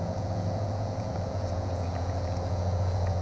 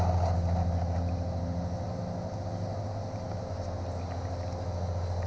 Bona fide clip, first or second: second